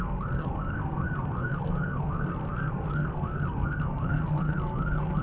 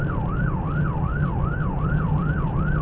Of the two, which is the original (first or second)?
second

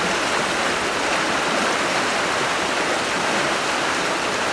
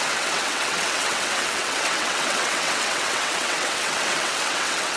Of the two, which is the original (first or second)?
first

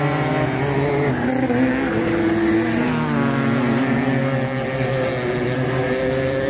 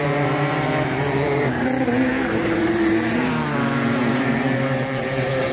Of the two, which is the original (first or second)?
first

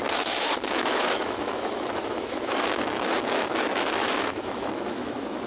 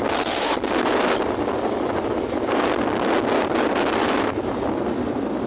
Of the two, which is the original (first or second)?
second